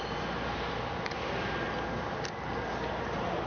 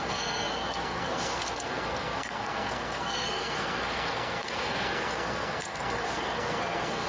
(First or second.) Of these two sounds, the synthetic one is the second